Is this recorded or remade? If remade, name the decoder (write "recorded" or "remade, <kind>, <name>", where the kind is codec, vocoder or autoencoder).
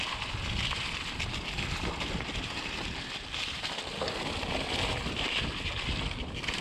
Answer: recorded